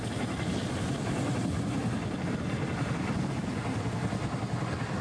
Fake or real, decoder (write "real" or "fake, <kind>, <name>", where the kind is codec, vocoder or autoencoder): real